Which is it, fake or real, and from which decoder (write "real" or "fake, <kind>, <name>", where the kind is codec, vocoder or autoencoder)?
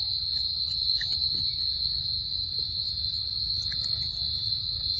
real